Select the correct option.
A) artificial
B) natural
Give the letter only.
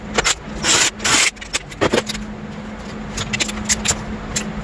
B